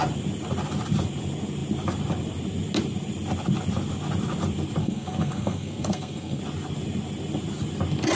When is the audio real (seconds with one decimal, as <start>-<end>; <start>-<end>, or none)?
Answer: 0.0-4.8; 6.4-8.2